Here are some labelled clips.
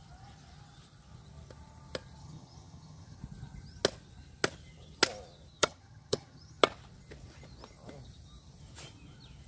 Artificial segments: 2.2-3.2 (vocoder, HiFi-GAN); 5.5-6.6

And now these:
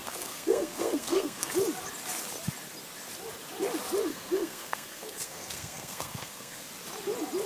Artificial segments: 0.0-1.5 (codec, SNAC); 4.1-6.7

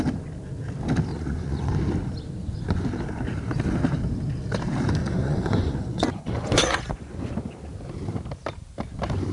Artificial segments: 1.1-1.7 (vocoder, Vocos); 5.0-7.3

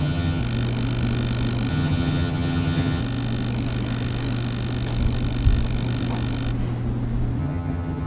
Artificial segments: 0.0-0.4 (vocoder, HiFi-GAN); 1.7-3.0; 7.4-8.1

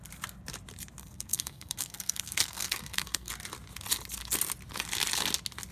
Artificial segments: 1.0-3.3 (codec, SNAC)